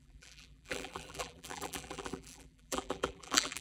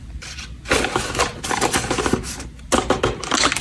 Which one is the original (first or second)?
second